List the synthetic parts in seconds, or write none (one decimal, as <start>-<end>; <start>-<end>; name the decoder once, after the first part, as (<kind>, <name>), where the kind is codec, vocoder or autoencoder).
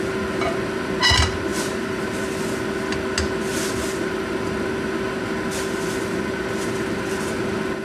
1.5-2.0 (vocoder, BigVGAN v2)